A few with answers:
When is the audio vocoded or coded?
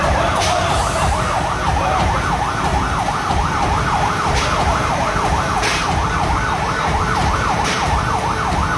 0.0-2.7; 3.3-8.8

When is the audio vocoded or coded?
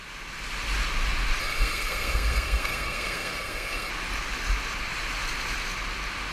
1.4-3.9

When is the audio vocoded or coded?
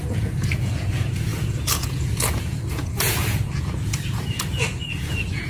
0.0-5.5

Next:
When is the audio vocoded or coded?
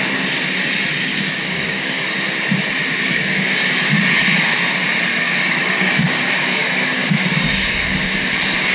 1.1-2.1; 2.8-3.7; 5.1-8.2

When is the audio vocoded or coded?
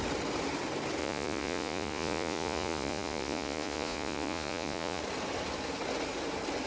1.0-5.0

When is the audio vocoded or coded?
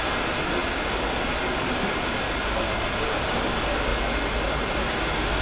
0.6-3.4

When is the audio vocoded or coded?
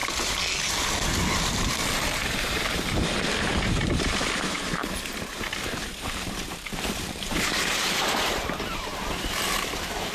1.3-10.1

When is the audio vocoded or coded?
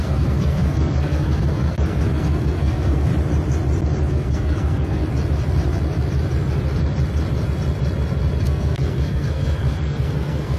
0.0-3.1; 4.1-5.0; 8.4-10.6